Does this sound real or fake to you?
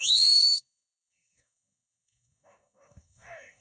fake